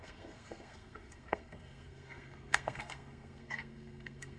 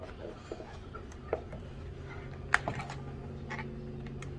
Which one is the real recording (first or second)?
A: second